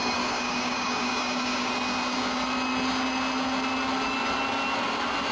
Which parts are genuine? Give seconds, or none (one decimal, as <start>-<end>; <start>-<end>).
1.7-5.3